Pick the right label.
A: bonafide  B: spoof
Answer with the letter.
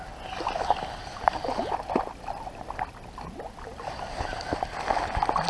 A